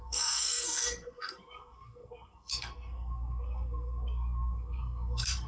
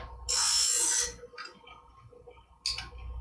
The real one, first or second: second